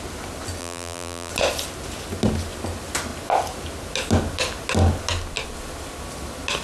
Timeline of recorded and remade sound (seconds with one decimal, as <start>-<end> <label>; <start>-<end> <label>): 0.0-0.6 recorded; 0.6-1.3 remade; 1.3-6.6 recorded